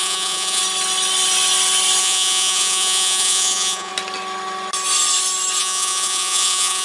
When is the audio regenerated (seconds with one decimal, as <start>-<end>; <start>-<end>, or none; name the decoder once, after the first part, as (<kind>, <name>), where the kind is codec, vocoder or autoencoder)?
0.0-0.6 (vocoder, Vocos); 2.0-3.9; 5.6-6.8